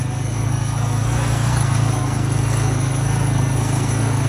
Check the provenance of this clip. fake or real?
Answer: fake